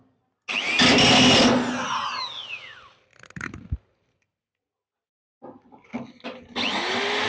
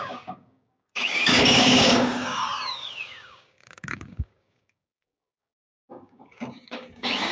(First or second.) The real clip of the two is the first